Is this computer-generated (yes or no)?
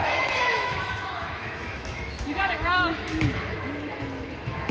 yes